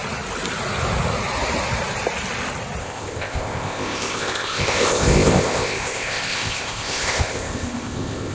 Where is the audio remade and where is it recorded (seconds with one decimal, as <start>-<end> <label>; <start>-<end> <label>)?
0.0-2.8 recorded; 2.8-8.3 remade